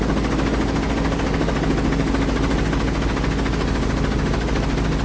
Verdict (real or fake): real